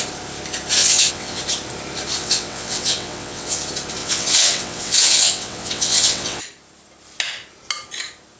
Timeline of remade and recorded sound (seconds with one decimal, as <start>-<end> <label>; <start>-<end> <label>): 0.0-0.8 recorded; 0.8-1.4 remade; 1.4-2.2 recorded; 2.2-3.6 remade; 3.6-4.0 recorded; 4.0-6.4 remade; 6.4-8.4 recorded